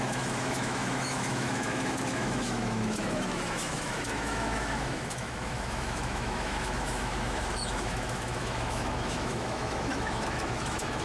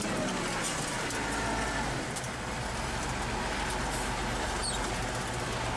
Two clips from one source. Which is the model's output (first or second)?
first